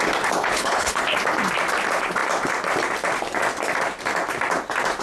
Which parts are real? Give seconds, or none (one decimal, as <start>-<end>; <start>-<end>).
0.0-0.4; 1.0-5.0

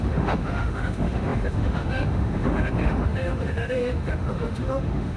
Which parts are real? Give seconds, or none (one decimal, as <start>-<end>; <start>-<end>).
none

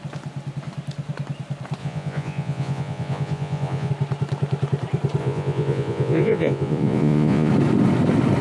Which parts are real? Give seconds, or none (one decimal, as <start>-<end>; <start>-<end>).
0.0-1.8; 3.9-5.2; 7.5-8.4

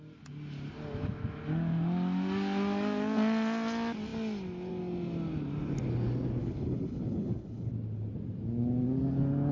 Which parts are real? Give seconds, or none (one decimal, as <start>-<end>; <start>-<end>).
0.0-6.4; 7.7-9.5